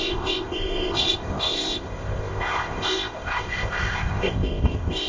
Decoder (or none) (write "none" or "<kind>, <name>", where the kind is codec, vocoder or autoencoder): codec, ZipCodec